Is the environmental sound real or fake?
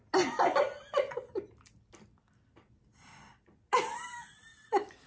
real